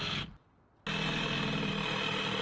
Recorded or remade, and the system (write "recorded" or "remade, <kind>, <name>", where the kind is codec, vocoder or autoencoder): recorded